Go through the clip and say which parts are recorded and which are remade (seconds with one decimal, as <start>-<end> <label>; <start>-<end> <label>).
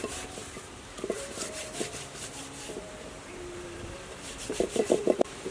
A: 0.0-5.5 remade